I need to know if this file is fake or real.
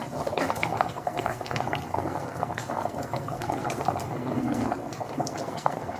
fake